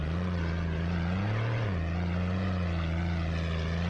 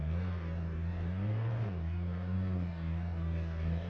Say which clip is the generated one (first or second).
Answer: second